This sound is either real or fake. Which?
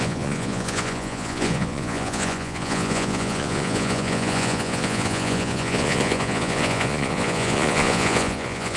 fake